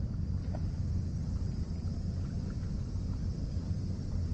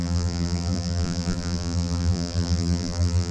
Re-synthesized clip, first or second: second